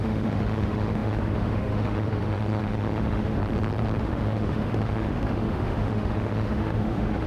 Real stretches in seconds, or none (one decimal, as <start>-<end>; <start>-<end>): 3.4-4.0